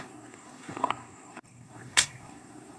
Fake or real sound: fake